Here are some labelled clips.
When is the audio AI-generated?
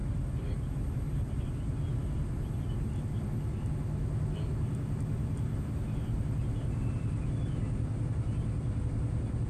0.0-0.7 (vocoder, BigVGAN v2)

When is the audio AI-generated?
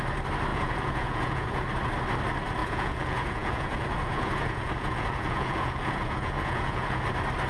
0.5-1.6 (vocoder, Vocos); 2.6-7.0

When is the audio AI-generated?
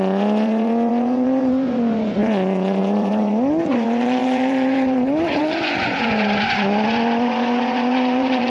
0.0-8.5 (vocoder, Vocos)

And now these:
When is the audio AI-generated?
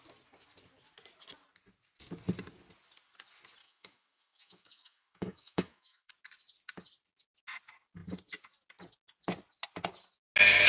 3.6-6.1 (autoencoder, DAC-VAE)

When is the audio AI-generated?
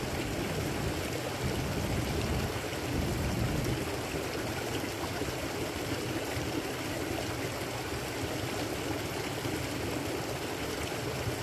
none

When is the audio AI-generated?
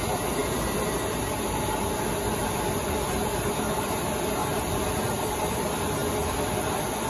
0.0-0.4 (vocoder, BigVGAN v2); 2.4-4.4; 4.9-6.0; 6.6-7.1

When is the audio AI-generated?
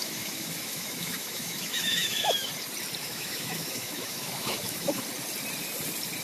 0.0-2.5 (autoencoder, DAC-VAE); 3.0-5.0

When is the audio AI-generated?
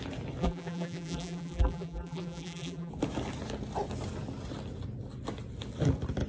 0.4-2.9 (vocoder, BigVGAN v2)